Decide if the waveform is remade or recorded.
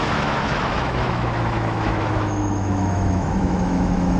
remade